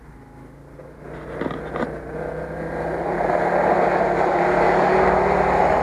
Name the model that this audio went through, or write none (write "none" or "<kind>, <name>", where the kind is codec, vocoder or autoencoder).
none